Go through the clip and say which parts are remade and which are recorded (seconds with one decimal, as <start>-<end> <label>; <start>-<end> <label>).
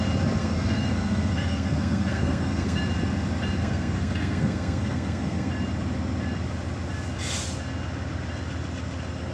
0.0-0.4 recorded; 0.4-2.8 remade; 2.8-3.6 recorded; 3.6-5.5 remade; 5.5-9.3 recorded